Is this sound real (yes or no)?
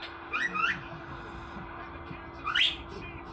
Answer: yes